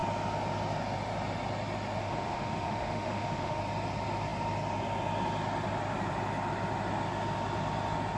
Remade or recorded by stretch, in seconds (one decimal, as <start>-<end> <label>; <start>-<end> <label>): 0.0-2.0 recorded; 2.0-3.6 remade; 3.6-8.2 recorded